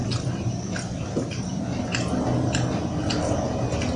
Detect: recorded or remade recorded